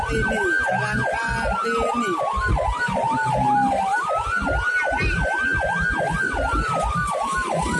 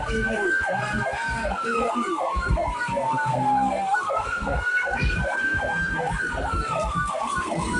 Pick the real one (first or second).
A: first